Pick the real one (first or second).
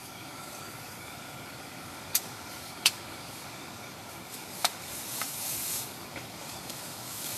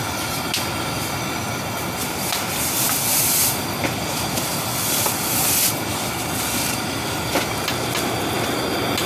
second